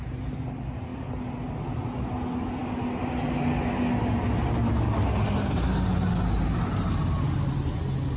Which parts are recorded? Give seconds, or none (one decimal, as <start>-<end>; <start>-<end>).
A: 0.0-8.2